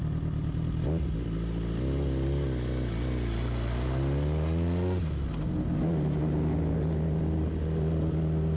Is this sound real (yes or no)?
yes